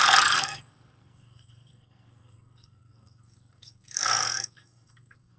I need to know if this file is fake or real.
fake